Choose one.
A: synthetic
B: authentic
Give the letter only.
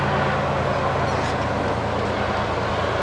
B